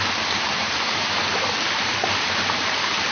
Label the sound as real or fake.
fake